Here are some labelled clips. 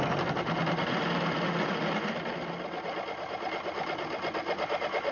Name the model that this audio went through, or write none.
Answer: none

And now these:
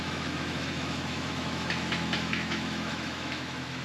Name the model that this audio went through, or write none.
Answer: autoencoder, DAC-VAE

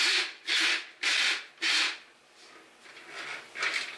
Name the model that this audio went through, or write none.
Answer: none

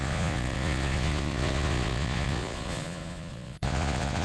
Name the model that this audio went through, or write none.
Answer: vocoder, Vocos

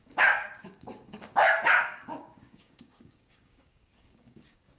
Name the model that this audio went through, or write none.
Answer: codec, DAC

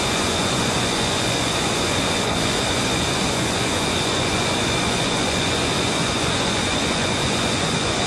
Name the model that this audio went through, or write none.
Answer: vocoder, Vocos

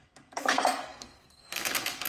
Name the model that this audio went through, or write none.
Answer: codec, SNAC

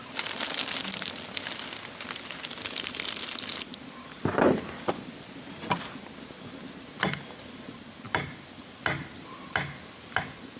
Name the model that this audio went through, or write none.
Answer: none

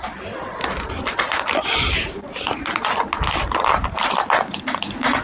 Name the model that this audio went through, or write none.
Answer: none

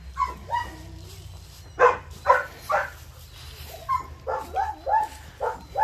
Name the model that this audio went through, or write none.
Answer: none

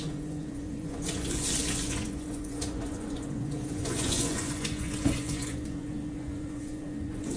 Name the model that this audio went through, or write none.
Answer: vocoder, Vocos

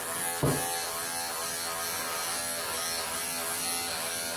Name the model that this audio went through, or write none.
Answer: none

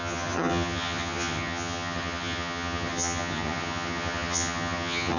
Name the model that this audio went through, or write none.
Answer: vocoder, HiFi-GAN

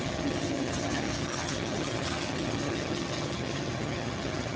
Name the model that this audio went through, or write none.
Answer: vocoder, HiFi-GAN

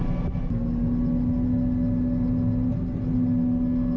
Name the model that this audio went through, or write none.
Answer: none